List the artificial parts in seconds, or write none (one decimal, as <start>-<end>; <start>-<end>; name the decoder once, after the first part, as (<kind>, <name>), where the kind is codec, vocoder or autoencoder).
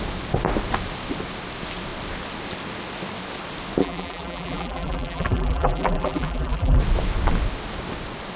3.8-6.8 (vocoder, BigVGAN v2)